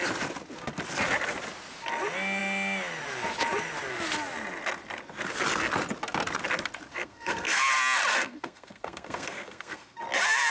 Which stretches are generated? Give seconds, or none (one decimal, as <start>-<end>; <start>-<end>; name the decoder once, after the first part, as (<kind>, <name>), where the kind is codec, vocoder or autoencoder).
6.9-7.6 (codec, SNAC); 8.1-10.0

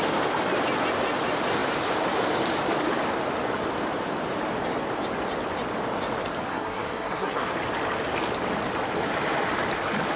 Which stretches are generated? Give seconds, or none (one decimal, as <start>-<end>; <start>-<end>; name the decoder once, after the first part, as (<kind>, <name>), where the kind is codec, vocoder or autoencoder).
6.5-7.5 (codec, SNAC)

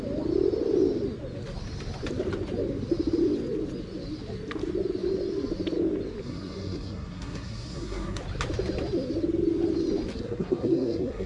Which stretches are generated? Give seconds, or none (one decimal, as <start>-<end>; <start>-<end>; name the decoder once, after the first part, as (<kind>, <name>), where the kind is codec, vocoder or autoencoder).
6.2-8.2 (codec, SNAC); 10.1-11.3

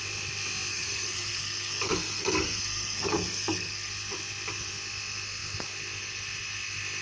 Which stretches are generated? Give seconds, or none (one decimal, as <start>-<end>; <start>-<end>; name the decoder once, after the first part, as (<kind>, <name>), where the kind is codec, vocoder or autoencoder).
0.7-3.9 (codec, SNAC)

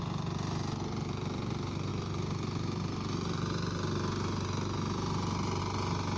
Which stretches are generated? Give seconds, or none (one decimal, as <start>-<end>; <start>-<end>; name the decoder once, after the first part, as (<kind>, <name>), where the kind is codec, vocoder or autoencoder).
none